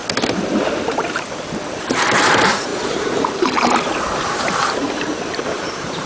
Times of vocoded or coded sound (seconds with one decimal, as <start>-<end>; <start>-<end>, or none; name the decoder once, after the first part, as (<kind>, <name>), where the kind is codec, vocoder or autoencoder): 0.6-1.0 (vocoder, BigVGAN v2); 1.8-6.1

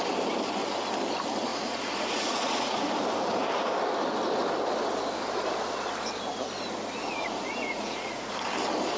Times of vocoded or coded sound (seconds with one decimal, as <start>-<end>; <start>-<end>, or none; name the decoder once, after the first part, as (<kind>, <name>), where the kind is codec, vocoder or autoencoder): 1.5-2.9 (vocoder, Vocos); 7.0-8.3

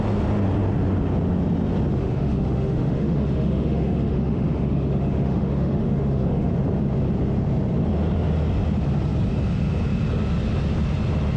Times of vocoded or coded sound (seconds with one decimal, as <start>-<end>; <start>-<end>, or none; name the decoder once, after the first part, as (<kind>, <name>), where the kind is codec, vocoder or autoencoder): 2.0-6.5 (autoencoder, DAC-VAE)

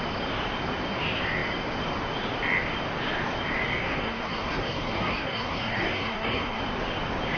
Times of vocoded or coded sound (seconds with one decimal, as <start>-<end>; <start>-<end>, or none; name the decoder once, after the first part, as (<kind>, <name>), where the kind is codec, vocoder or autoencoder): 3.8-6.6 (codec, SNAC)

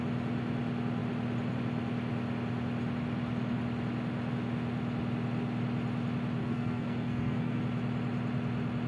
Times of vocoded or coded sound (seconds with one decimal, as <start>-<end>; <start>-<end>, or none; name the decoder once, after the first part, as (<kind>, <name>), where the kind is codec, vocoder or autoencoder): 6.4-7.6 (codec, SNAC)

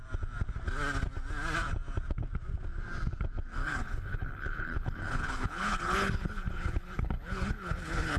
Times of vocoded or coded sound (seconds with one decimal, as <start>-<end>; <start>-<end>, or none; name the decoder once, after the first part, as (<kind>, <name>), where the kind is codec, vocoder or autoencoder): 3.6-8.2 (codec, HILCodec)